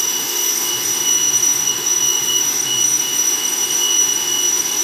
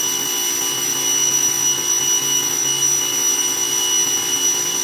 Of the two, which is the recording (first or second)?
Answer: second